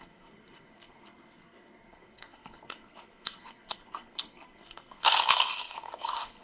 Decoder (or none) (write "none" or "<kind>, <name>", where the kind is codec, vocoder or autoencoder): codec, SNAC